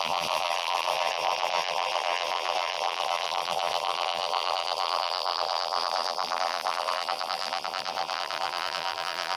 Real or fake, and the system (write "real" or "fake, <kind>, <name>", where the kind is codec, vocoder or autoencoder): fake, vocoder, BigVGAN v2